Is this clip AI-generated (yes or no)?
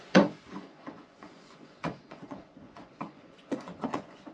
yes